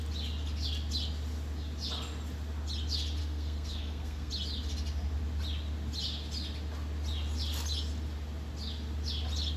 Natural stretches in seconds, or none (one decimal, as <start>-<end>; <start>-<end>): 0.0-3.2; 4.3-9.6